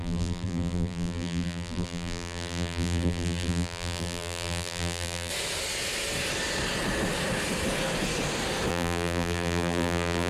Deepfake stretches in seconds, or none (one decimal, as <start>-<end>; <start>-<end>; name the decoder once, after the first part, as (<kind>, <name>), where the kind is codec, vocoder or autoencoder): 0.0-5.3 (vocoder, BigVGAN v2); 8.7-10.3